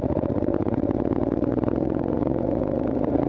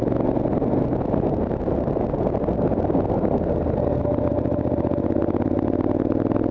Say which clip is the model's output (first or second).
first